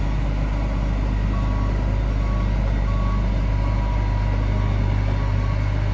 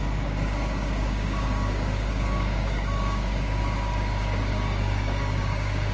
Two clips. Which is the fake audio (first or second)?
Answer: second